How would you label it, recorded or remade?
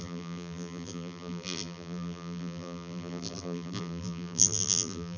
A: remade